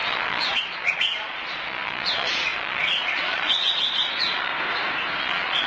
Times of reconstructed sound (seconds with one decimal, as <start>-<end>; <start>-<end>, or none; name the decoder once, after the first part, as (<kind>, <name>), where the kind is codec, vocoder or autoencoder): 0.0-4.5 (vocoder, Vocos); 5.2-5.7